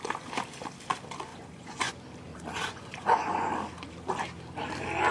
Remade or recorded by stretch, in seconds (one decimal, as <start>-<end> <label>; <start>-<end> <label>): 0.0-1.3 recorded; 1.3-1.9 remade; 1.9-2.3 recorded; 2.3-3.5 remade; 3.5-5.1 recorded